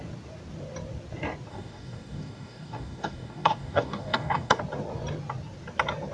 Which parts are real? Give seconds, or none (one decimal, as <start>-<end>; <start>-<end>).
0.0-1.5; 4.6-6.1